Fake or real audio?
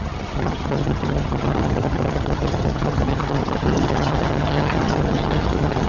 fake